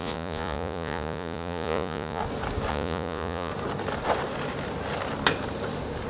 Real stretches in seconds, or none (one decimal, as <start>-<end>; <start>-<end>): 2.2-2.7; 3.5-6.1